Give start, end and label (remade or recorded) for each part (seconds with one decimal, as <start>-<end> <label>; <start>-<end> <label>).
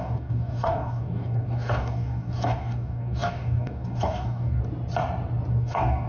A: 0.0-4.6 remade; 4.6-5.5 recorded; 5.5-6.1 remade